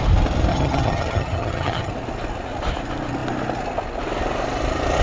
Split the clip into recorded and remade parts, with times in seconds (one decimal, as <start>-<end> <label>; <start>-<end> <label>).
0.0-0.5 recorded; 0.5-1.9 remade; 1.9-5.0 recorded